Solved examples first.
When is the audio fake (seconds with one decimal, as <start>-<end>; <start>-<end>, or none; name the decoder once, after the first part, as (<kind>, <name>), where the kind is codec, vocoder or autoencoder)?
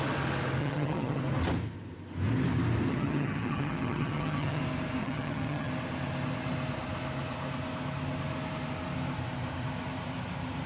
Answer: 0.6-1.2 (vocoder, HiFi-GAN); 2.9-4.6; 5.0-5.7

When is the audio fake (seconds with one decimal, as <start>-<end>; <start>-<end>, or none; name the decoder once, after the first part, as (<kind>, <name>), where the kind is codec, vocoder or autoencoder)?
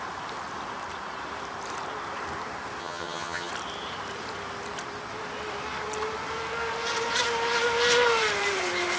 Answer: 2.8-3.5 (vocoder, HiFi-GAN)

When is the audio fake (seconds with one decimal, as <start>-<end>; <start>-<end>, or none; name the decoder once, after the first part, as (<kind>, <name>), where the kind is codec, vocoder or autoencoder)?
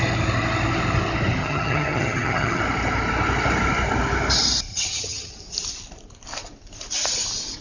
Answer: 1.4-2.6 (vocoder, HiFi-GAN); 4.7-5.3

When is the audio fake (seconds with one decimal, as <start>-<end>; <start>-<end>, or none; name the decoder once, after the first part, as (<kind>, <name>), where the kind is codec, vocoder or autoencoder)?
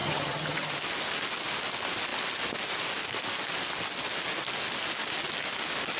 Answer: 0.0-0.7 (vocoder, HiFi-GAN)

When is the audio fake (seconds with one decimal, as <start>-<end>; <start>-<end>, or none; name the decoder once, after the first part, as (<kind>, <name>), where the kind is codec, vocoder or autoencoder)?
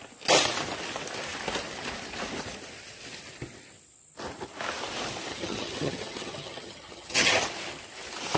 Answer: 5.3-7.3 (vocoder, HiFi-GAN)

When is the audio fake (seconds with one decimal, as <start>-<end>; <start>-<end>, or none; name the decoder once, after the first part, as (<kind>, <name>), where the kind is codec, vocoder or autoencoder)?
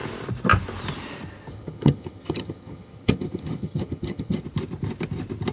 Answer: 1.5-4.4 (vocoder, HiFi-GAN)